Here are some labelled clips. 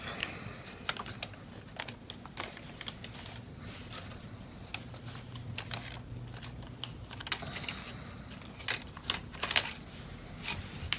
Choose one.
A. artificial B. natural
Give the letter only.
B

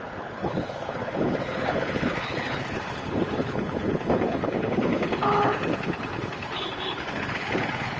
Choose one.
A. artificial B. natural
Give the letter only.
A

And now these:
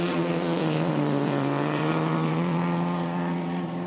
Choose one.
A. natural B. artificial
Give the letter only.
B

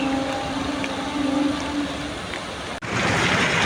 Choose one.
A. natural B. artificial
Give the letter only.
A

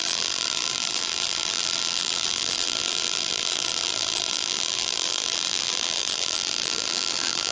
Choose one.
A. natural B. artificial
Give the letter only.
B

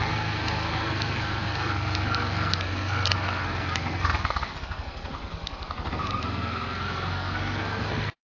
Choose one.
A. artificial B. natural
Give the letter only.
A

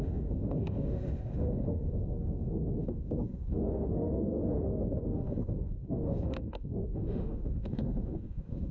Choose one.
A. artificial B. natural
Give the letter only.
A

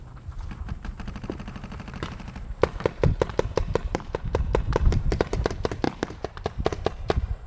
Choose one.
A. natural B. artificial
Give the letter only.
B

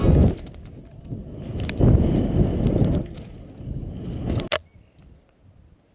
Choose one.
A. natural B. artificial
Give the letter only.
A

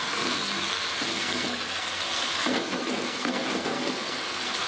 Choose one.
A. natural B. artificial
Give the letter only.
B